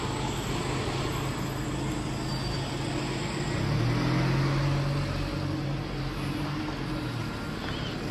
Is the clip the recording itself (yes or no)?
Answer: yes